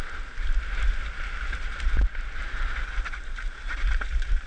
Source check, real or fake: real